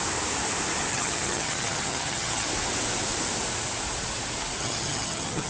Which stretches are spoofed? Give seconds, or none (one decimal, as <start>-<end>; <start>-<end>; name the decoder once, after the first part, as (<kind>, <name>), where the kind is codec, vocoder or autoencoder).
0.9-2.5 (vocoder, HiFi-GAN); 4.6-5.5